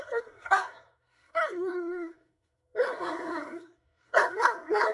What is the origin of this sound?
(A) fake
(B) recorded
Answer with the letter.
A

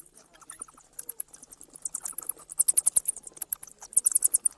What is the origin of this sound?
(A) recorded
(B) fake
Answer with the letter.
A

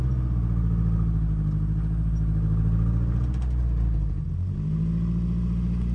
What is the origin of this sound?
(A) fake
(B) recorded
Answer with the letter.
B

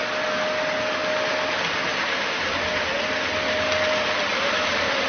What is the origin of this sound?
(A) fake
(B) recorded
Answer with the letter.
B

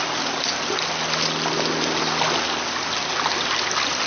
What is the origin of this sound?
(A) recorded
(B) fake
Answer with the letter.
A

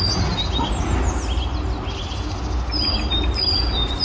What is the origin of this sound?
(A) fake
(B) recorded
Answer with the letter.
B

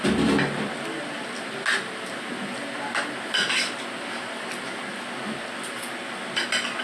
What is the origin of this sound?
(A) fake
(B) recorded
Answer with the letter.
B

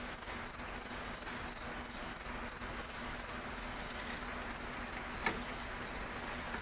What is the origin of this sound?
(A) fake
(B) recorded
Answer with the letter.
B